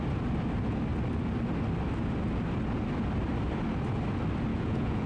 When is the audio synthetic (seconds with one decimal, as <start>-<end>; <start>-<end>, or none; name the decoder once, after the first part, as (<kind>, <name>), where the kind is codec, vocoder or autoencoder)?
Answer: 4.5-5.1 (vocoder, Vocos)